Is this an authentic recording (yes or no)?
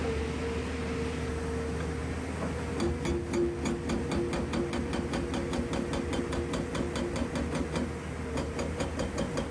yes